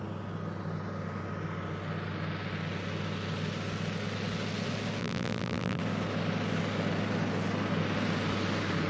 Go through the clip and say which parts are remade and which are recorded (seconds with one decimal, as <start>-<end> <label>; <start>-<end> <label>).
0.0-5.0 recorded; 5.0-5.8 remade; 5.8-8.9 recorded